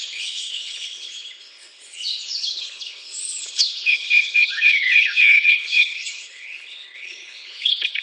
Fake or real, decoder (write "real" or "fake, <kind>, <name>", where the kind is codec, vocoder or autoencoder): fake, codec, HILCodec